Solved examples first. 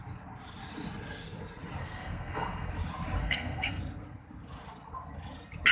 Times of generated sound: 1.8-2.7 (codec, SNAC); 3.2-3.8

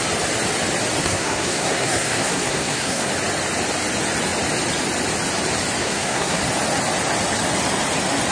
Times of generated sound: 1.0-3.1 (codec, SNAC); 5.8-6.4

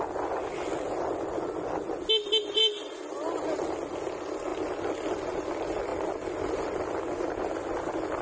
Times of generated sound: none

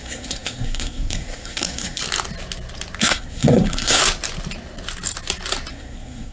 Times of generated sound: 0.0-2.0 (codec, SNAC); 3.0-4.0; 5.7-6.3

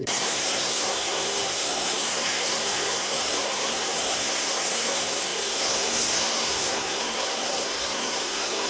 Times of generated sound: 0.0-8.7 (codec, SNAC)